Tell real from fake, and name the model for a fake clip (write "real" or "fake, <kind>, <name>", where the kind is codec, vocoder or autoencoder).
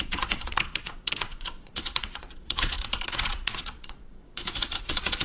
fake, vocoder, Vocos